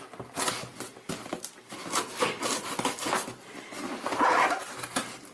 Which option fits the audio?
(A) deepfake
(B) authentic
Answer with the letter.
B